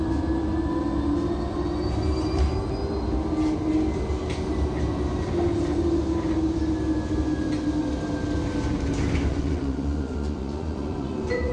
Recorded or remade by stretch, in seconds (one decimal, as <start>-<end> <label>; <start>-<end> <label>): 0.0-9.3 recorded; 9.3-11.5 remade